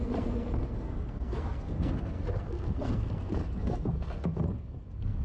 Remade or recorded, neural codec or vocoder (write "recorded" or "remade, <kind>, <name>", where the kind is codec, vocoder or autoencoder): remade, codec, SNAC